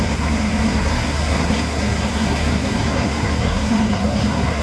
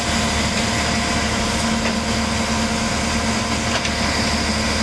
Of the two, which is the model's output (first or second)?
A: first